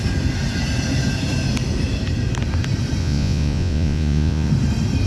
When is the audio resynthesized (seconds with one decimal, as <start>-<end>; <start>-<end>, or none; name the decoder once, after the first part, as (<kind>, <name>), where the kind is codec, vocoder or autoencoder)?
3.0-4.5 (vocoder, Vocos)